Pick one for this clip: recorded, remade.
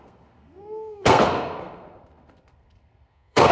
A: remade